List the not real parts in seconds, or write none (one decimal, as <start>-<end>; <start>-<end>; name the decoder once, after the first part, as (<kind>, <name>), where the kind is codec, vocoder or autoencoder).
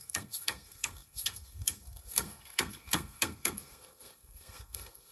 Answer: 0.0-5.1 (codec, SNAC)